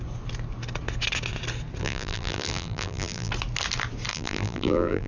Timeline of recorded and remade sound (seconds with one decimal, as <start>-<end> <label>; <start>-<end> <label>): 0.0-1.8 recorded; 1.8-3.3 remade; 3.3-4.1 recorded; 4.1-5.1 remade